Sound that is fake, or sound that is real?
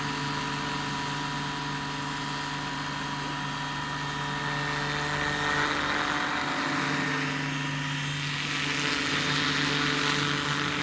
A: real